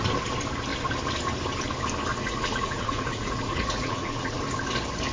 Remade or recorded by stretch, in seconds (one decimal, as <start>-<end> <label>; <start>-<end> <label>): 0.0-2.1 recorded; 2.1-4.4 remade; 4.4-5.1 recorded